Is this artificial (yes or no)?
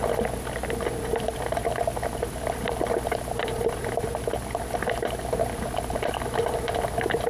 no